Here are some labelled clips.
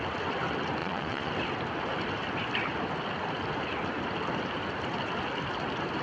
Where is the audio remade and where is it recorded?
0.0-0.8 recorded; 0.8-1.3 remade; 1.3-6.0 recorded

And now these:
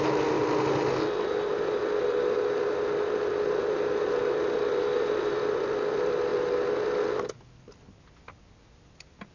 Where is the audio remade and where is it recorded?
0.0-9.3 recorded

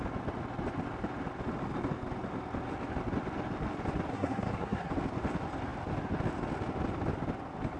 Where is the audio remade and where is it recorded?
0.0-4.1 recorded; 4.1-4.9 remade; 4.9-7.8 recorded

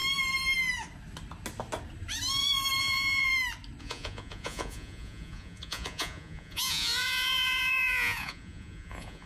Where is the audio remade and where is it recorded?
0.0-2.8 recorded; 2.8-3.3 remade; 3.3-3.8 recorded; 3.8-9.3 remade